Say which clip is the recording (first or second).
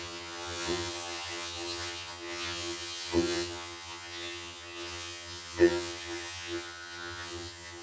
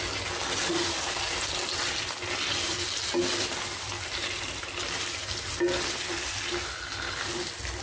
second